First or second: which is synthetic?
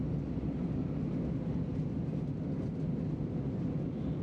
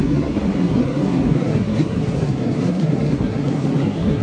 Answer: second